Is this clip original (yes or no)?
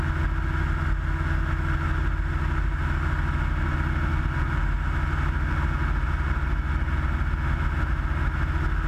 yes